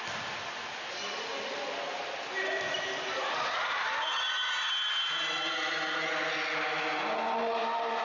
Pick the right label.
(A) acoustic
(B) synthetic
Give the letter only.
A